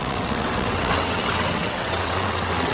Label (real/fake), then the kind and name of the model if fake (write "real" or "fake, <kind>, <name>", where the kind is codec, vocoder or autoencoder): fake, vocoder, WaveNeXt